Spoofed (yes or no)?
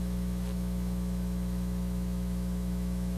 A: yes